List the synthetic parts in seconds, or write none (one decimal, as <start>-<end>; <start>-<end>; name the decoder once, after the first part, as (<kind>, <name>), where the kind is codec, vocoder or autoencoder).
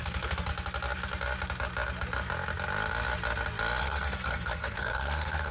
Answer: 0.0-0.5 (codec, SNAC); 3.8-5.5